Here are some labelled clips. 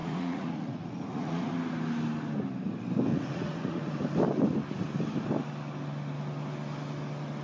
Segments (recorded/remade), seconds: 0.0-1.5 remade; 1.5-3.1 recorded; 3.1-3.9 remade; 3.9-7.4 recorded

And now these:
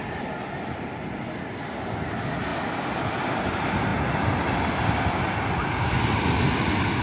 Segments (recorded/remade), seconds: 0.0-7.0 recorded

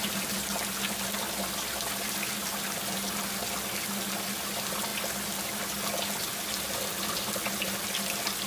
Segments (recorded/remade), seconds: 0.0-8.5 recorded